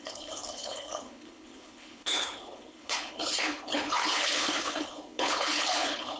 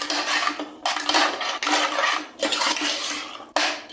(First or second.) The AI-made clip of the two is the first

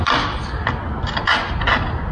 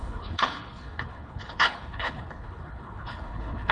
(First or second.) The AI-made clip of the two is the second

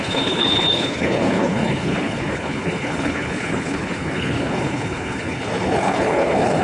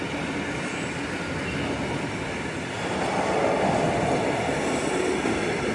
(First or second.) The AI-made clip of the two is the first